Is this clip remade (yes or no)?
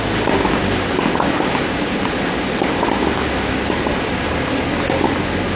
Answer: no